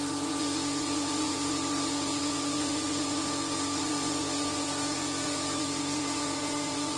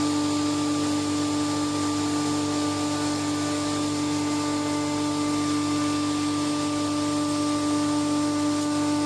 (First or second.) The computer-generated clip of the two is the first